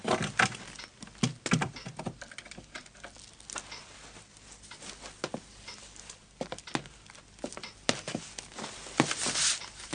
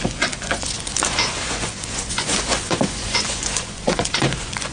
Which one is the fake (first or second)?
second